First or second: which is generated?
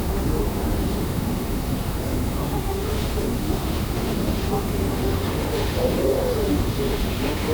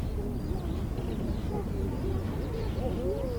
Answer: first